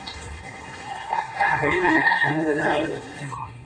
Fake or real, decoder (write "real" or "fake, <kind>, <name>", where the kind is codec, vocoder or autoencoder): fake, codec, SNAC